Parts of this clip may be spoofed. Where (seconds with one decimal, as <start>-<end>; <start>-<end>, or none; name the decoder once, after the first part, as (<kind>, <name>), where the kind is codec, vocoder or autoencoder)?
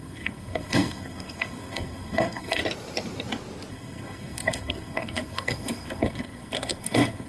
0.0-2.6 (codec, SNAC); 3.7-7.3